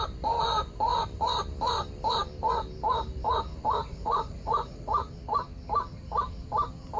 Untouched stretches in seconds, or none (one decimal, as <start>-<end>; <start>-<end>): 0.0-3.8; 5.1-7.0